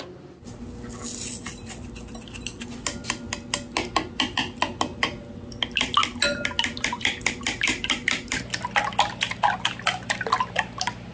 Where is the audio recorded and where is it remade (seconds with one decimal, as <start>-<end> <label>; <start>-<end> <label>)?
0.0-11.1 recorded